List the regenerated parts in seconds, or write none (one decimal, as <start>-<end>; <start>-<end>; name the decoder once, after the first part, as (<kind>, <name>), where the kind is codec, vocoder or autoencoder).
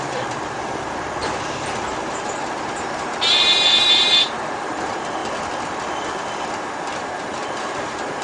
0.0-5.2 (vocoder, BigVGAN v2); 7.0-8.2